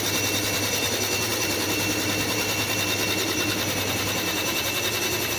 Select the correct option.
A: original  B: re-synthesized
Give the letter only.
A